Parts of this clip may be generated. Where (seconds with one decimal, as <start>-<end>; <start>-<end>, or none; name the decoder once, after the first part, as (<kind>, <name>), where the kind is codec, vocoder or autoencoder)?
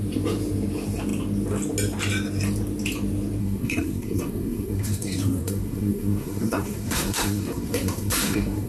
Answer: 3.4-8.7 (codec, SNAC)